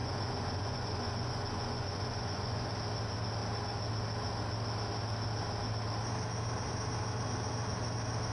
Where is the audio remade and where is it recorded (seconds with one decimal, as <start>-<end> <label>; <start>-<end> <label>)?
0.0-2.7 remade; 2.7-8.3 recorded